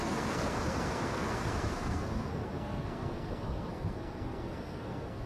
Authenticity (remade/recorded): remade